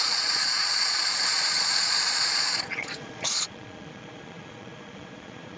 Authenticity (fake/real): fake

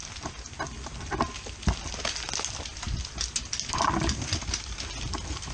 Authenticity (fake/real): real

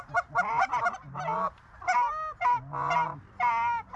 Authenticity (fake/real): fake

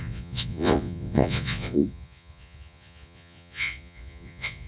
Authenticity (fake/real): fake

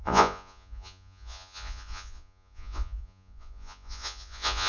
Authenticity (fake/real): fake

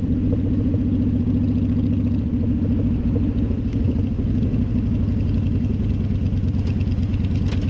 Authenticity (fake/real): real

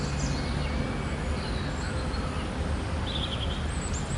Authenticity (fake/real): real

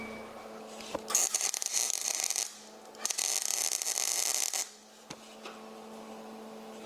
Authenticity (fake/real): real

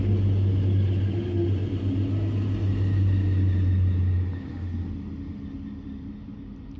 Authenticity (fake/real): real